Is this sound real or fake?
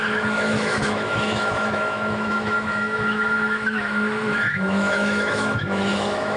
fake